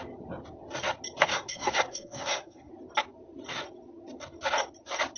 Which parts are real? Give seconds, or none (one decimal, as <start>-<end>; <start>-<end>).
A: 0.0-1.3; 2.7-5.2